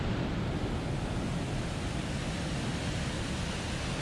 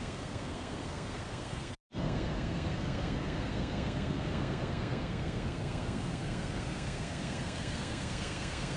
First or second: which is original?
first